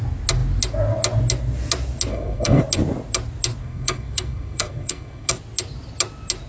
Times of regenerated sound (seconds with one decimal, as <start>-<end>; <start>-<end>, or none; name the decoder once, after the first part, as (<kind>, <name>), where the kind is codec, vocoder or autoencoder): 2.1-2.6 (codec, SNAC); 3.6-5.3